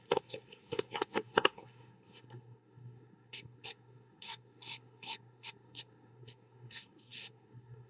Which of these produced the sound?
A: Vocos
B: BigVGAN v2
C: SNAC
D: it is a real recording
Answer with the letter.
C